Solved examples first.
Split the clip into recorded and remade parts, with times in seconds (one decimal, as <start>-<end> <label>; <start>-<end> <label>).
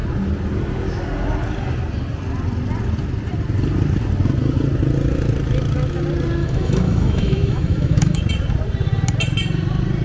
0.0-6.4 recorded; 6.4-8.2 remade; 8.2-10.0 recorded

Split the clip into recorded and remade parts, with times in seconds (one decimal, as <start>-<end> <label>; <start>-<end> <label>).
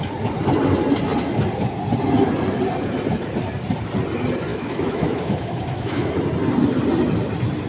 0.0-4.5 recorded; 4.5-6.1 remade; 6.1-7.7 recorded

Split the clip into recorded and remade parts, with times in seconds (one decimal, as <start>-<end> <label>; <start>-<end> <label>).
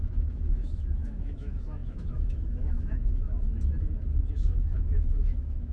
0.0-3.5 remade; 3.5-4.3 recorded; 4.3-5.7 remade